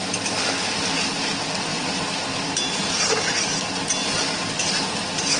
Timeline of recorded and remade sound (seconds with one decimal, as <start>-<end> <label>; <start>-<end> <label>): 0.0-0.5 remade; 0.5-1.7 recorded; 1.7-3.5 remade; 3.5-4.0 recorded; 4.0-4.8 remade; 4.8-5.4 recorded

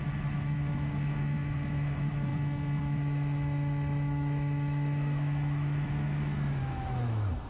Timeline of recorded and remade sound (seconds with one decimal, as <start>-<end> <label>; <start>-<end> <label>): 0.0-2.3 remade; 2.3-2.8 recorded; 2.8-7.5 remade

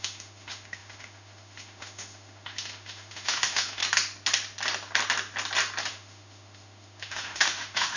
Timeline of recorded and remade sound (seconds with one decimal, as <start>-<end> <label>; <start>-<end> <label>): 0.0-3.8 remade; 3.8-5.9 recorded; 5.9-8.0 remade

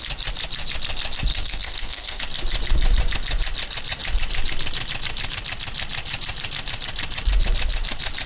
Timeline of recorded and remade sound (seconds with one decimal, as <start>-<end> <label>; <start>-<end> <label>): 0.0-1.3 recorded; 1.3-2.2 remade; 2.2-8.3 recorded